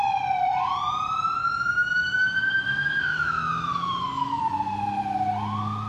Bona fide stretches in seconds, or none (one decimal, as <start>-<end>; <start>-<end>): 0.0-1.4; 4.4-5.9